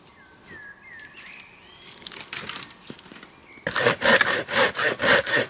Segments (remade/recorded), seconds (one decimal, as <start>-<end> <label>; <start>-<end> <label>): 0.0-5.5 recorded